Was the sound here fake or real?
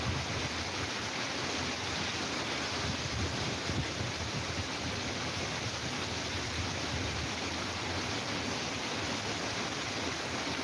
real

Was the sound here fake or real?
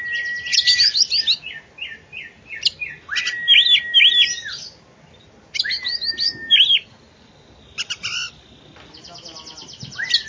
real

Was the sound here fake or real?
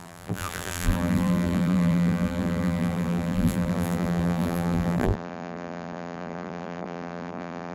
fake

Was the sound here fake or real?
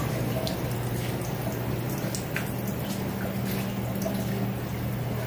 real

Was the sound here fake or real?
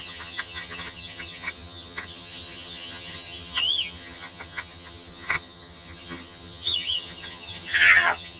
fake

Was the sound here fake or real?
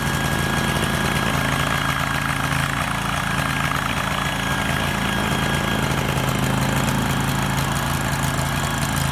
real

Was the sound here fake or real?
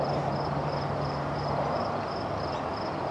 real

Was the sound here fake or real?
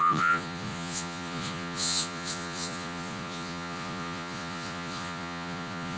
fake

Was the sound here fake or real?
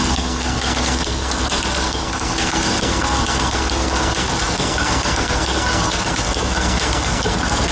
fake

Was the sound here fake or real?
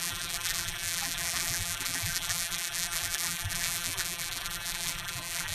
fake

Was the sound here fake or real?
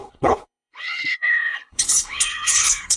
fake